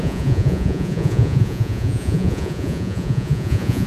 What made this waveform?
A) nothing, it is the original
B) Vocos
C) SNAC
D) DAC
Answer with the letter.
B